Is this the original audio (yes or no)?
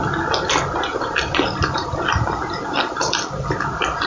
yes